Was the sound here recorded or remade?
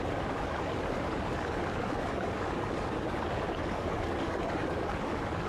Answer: remade